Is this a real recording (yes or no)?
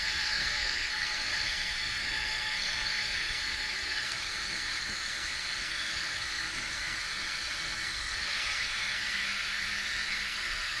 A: no